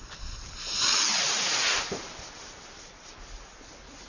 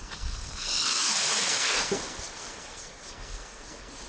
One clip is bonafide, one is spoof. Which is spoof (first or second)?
second